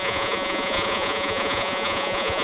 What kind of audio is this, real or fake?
fake